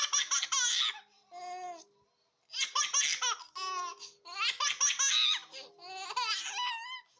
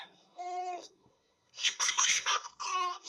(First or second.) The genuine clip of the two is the first